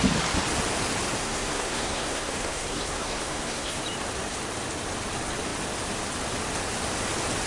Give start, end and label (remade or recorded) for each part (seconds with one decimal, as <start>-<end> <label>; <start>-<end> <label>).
0.0-1.2 recorded; 1.2-3.8 remade; 3.8-7.5 recorded